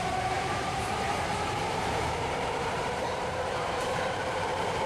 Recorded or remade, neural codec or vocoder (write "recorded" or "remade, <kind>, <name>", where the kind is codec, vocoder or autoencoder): remade, vocoder, BigVGAN v2